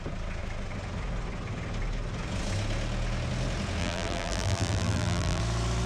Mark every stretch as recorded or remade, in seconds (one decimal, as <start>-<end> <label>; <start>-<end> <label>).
0.0-3.8 recorded; 3.8-5.4 remade; 5.4-5.9 recorded